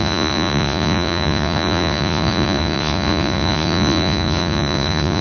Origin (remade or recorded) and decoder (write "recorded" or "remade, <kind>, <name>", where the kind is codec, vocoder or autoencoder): remade, vocoder, Vocos